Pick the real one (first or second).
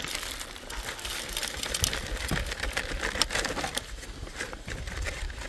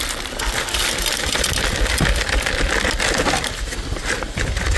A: second